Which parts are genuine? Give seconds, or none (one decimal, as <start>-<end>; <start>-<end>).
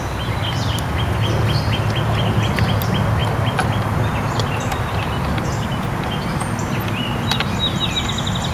0.0-8.5